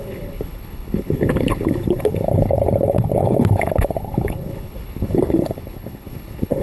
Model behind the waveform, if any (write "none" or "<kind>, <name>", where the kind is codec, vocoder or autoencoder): codec, HILCodec